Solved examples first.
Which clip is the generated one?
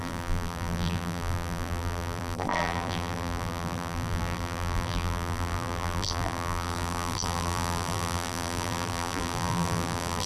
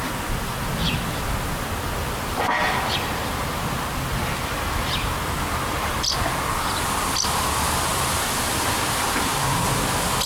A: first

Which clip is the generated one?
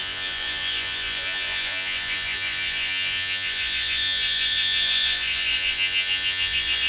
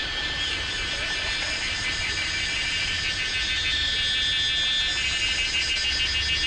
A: first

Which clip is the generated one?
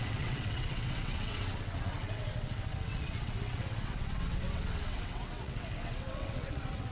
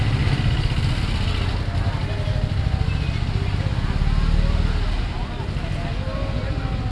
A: first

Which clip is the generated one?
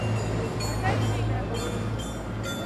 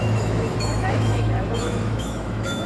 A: second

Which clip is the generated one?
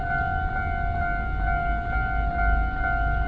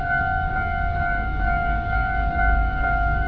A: second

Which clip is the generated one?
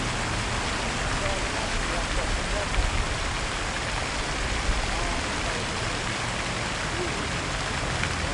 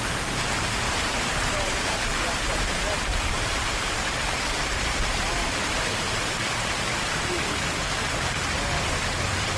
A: second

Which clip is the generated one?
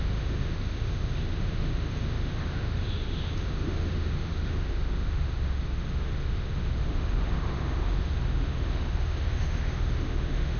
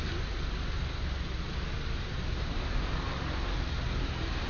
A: first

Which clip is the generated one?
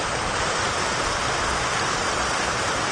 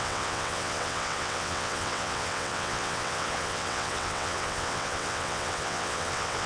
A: second